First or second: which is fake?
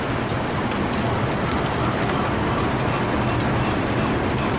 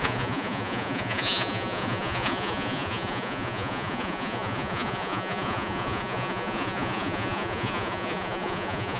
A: second